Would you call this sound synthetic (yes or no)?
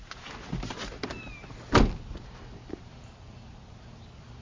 no